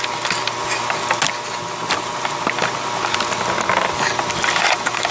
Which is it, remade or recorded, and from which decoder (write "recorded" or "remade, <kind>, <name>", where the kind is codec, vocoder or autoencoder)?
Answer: recorded